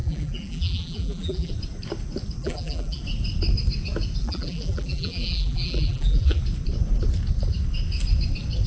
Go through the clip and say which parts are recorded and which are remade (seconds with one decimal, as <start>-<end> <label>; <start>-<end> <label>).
0.0-1.5 remade; 1.5-2.4 recorded; 2.4-3.0 remade; 3.0-4.2 recorded; 4.2-6.4 remade; 6.4-8.7 recorded

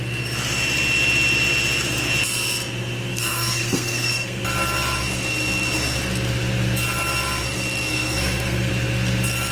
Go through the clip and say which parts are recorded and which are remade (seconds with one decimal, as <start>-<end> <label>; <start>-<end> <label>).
0.0-3.1 recorded; 3.1-4.4 remade; 4.4-7.9 recorded; 7.9-8.7 remade; 8.7-9.5 recorded